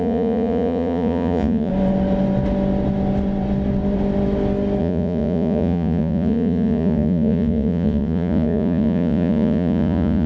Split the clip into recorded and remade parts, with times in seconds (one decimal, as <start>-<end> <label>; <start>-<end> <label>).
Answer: 0.0-1.7 remade; 1.7-4.8 recorded; 4.8-10.3 remade